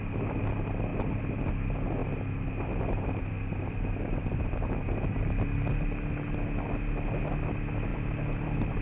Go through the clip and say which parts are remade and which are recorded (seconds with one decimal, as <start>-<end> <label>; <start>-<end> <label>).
0.0-0.9 recorded; 0.9-1.4 remade; 1.4-2.0 recorded; 2.0-4.8 remade; 4.8-7.9 recorded; 7.9-8.8 remade